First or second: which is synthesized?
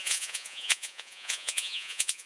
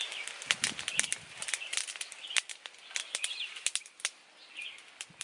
first